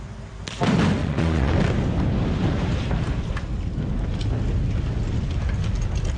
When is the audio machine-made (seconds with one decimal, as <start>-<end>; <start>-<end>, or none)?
1.0-1.5